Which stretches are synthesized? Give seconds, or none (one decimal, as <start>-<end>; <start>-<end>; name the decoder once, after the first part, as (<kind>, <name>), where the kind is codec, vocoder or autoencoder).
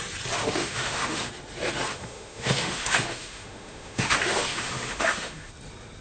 0.4-1.3 (autoencoder, DAC-VAE); 1.9-5.5